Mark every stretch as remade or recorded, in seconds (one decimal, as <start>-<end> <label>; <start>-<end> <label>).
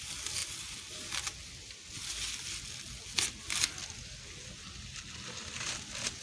0.0-6.2 recorded